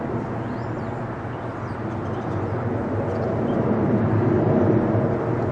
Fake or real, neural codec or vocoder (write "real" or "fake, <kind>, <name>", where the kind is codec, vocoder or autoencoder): real